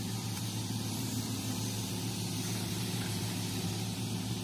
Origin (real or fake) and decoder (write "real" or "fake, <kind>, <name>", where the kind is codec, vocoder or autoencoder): fake, vocoder, BigVGAN v2